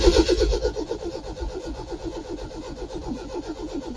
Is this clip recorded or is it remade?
remade